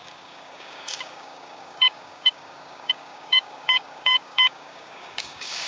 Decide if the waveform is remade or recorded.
remade